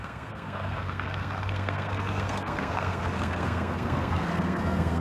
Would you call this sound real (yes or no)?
no